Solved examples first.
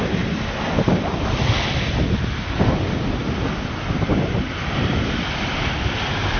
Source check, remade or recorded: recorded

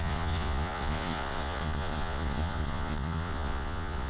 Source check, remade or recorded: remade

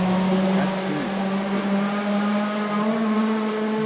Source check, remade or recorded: recorded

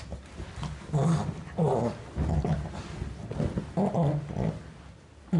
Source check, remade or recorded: recorded